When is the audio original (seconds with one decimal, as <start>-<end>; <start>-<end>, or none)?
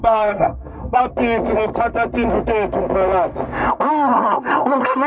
1.0-3.9